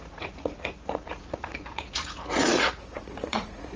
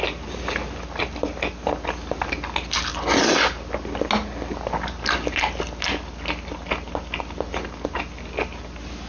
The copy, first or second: first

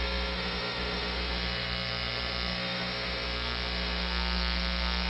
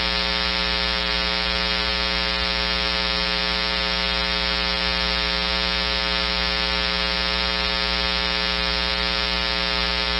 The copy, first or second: first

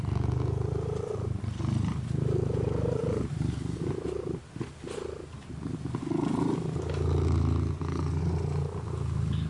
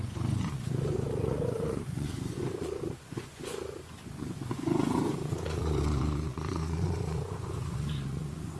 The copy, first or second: second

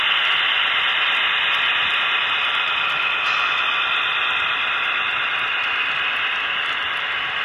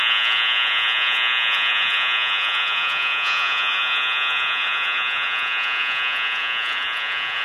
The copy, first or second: second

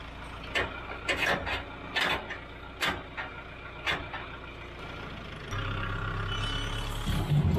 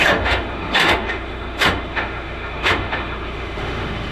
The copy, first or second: second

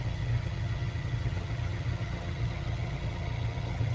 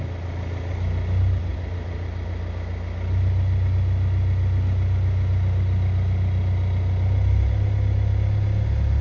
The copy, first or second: first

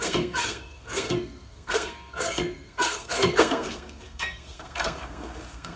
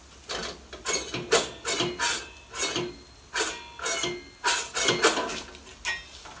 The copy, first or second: first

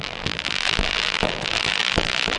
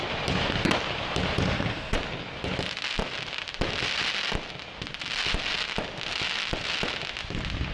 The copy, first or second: first